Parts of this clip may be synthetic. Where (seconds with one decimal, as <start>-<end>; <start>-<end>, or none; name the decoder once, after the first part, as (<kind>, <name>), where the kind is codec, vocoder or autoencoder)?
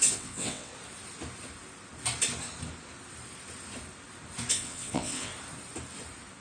0.0-0.7 (vocoder, WaveNeXt); 4.5-5.3